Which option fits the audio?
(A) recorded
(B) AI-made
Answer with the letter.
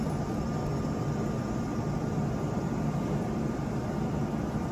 A